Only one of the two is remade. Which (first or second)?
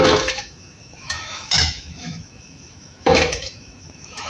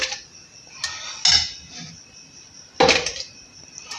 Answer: first